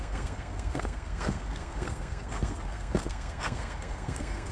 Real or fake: fake